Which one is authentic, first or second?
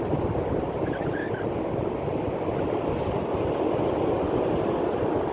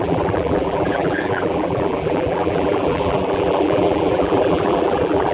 first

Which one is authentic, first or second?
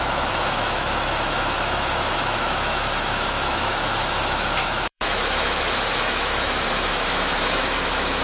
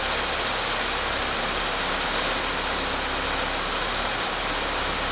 second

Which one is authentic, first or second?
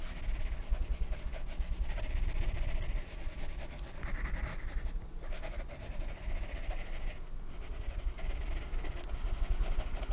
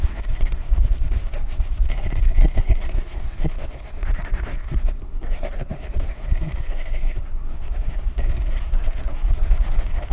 first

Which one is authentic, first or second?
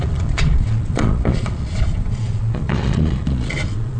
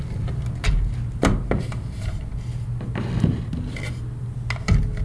second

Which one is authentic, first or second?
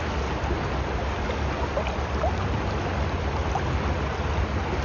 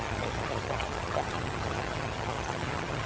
first